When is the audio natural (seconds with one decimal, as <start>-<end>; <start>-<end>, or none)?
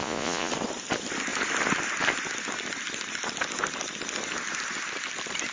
0.5-5.5